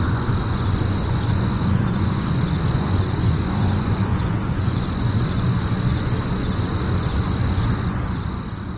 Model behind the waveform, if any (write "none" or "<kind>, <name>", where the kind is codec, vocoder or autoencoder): vocoder, Vocos